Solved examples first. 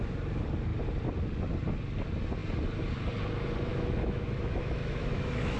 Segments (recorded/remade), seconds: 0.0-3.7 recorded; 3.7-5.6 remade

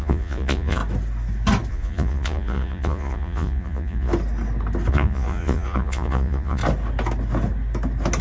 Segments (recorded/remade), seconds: 0.0-0.8 remade; 0.8-1.7 recorded; 1.7-4.1 remade; 4.1-4.9 recorded; 4.9-6.6 remade; 6.6-8.2 recorded

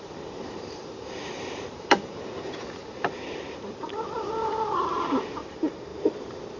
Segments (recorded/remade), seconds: 0.0-5.9 remade; 5.9-6.6 recorded

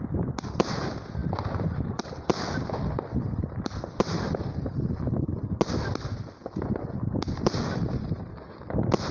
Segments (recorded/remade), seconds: 0.0-9.1 recorded

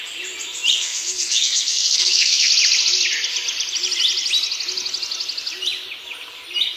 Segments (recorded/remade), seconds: 0.0-0.7 recorded; 0.7-2.5 remade; 2.5-6.8 recorded